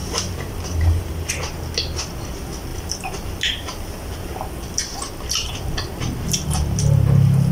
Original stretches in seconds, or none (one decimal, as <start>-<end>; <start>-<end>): 1.3-7.5